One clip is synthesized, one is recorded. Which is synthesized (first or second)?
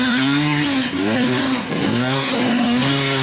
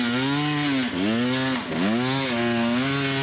first